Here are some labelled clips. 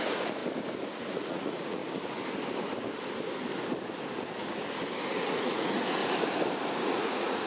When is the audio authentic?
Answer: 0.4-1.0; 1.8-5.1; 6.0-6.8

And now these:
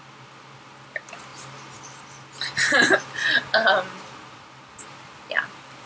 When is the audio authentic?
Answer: 0.0-5.9

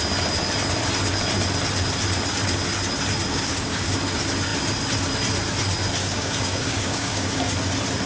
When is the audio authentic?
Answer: 0.0-3.3; 3.9-6.0; 7.4-8.1